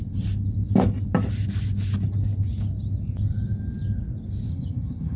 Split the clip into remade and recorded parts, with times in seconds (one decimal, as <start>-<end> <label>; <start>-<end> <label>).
0.0-4.5 recorded; 4.5-5.2 remade